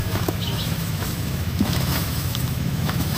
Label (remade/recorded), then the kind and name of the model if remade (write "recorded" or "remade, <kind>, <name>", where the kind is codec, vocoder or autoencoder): remade, autoencoder, DAC-VAE